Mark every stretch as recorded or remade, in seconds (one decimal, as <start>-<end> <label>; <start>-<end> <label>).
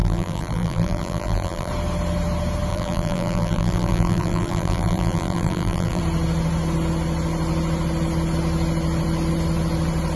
0.0-1.7 remade; 1.7-2.7 recorded; 2.7-6.0 remade; 6.0-10.2 recorded